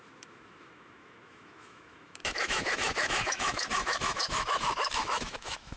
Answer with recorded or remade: remade